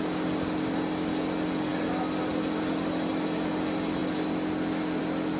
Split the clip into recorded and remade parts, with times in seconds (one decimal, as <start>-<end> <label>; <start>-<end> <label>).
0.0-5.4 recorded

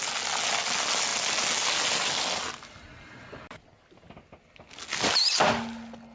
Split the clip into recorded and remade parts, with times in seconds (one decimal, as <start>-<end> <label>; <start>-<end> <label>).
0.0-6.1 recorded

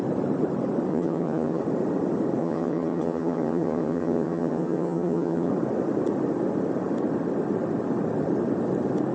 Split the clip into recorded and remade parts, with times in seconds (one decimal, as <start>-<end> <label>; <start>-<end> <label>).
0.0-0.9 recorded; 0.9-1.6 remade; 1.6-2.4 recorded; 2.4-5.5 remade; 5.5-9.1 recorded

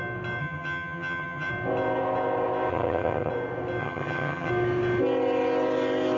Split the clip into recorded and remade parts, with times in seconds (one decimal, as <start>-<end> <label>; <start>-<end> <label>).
0.0-0.4 recorded; 0.4-1.5 remade; 1.5-2.7 recorded; 2.7-3.3 remade; 3.3-3.8 recorded; 3.8-4.5 remade; 4.5-6.2 recorded

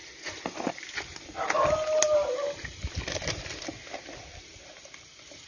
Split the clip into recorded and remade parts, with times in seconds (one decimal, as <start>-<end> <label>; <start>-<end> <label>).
0.0-5.5 recorded